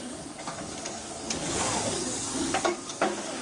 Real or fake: fake